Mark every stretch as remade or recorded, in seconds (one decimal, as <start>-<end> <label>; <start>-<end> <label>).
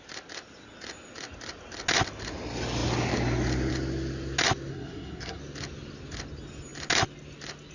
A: 0.0-4.7 recorded; 4.7-5.4 remade; 5.4-7.7 recorded